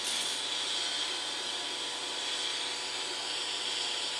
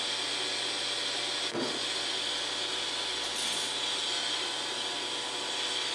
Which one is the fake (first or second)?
first